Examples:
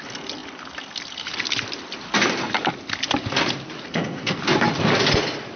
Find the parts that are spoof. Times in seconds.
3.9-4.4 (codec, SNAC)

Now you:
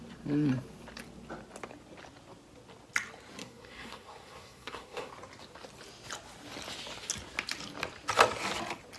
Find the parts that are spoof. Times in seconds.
3.4-5.1 (codec, SNAC)

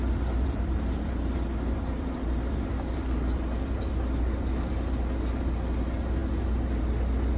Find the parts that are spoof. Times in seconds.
0.0-3.8 (vocoder, BigVGAN v2)